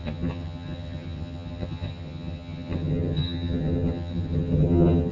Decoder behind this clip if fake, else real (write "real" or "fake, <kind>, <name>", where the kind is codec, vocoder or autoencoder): fake, vocoder, HiFi-GAN